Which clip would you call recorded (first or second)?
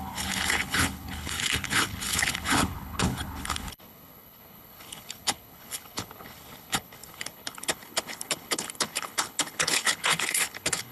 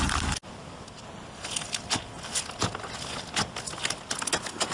second